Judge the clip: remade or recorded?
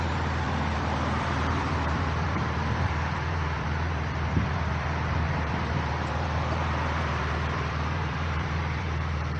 remade